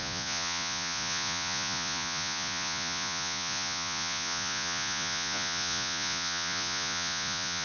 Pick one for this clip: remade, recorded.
remade